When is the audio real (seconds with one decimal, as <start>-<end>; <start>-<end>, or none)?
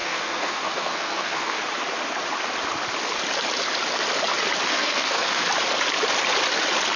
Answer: 1.6-4.7; 5.5-7.0